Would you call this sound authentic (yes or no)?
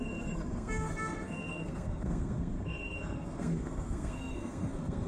no